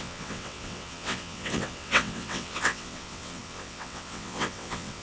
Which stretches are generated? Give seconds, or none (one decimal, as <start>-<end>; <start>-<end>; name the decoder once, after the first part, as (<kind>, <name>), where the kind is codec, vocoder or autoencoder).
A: 0.0-5.0 (vocoder, WaveNeXt)